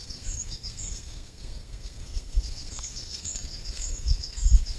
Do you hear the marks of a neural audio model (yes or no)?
yes